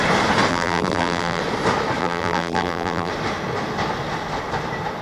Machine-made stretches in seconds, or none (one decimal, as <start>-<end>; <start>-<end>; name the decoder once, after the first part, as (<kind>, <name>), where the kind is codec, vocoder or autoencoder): 0.5-1.4 (vocoder, BigVGAN v2); 2.0-3.1